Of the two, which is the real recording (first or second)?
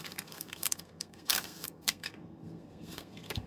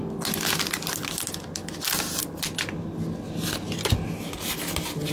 second